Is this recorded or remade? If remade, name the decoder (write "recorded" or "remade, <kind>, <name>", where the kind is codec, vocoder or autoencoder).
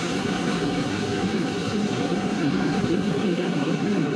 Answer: remade, codec, SNAC